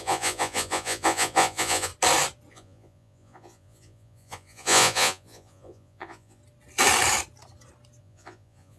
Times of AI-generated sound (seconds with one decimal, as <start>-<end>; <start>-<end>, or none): 0.0-1.9; 2.5-6.4; 8.0-8.8